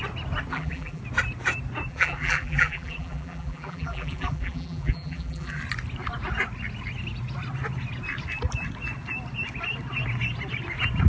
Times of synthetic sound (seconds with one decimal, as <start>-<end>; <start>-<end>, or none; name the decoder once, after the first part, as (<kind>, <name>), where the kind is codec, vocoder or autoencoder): 0.5-1.0 (vocoder, BigVGAN v2); 1.9-5.6